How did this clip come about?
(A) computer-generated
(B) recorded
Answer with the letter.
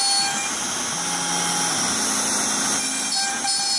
B